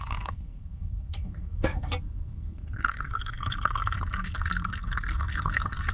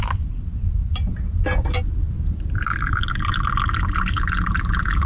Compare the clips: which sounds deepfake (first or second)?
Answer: first